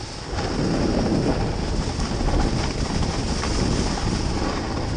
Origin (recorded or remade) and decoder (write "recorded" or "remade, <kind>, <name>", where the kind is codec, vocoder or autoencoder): recorded